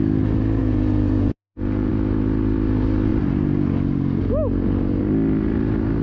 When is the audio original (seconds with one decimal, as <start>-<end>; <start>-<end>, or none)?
0.0-0.6; 1.9-6.0